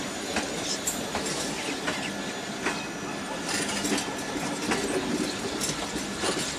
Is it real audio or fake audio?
real